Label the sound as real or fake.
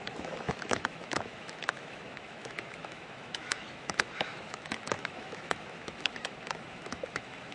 fake